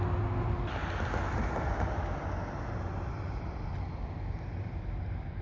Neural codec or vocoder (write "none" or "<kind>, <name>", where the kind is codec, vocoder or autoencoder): none